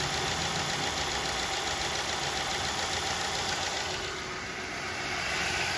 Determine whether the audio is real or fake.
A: real